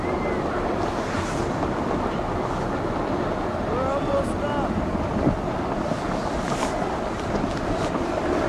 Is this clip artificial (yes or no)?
no